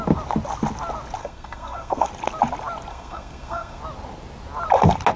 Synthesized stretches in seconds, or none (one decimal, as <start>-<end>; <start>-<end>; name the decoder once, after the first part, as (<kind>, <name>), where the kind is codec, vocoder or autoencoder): 1.2-2.1 (codec, SNAC); 2.9-3.8